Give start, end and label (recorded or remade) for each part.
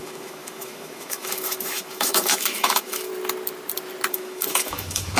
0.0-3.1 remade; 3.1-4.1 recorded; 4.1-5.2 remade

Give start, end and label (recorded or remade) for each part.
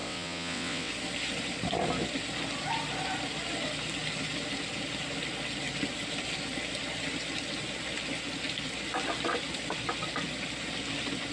0.0-0.9 remade; 0.9-11.3 recorded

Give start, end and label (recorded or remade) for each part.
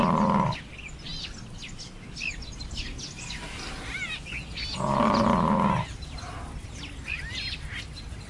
0.0-8.3 recorded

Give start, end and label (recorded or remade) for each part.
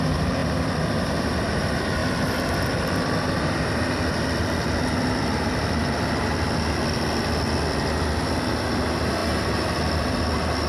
0.0-10.7 recorded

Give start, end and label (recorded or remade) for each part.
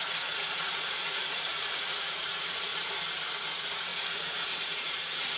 0.0-2.7 remade; 2.7-3.5 recorded; 3.5-5.4 remade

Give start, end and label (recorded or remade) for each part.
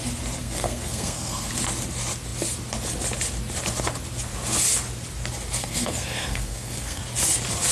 0.0-0.4 recorded; 0.4-1.5 remade; 1.5-5.6 recorded; 5.6-7.0 remade; 7.0-7.7 recorded